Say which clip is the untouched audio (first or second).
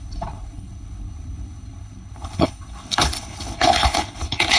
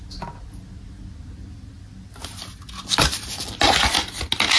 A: second